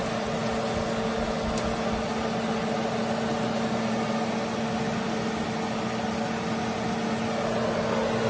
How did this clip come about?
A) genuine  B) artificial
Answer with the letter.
A